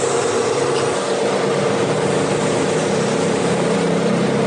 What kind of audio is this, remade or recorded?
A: recorded